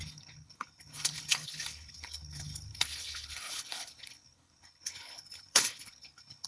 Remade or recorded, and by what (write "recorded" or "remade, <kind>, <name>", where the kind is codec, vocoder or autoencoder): remade, codec, HILCodec